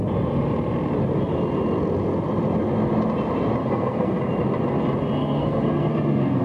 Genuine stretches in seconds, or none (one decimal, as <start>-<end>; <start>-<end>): 0.0-3.6; 4.2-5.2